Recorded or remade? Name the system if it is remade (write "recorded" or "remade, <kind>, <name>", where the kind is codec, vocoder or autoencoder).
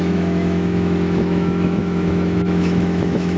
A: remade, autoencoder, DAC-VAE